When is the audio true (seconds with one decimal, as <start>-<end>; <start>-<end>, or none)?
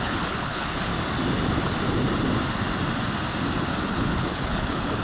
0.9-3.9